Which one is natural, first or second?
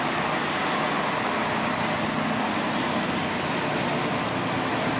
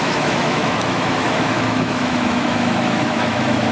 first